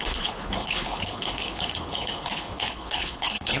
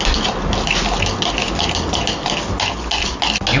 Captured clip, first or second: second